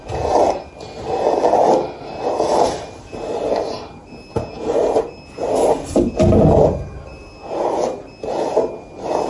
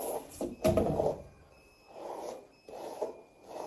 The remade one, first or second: second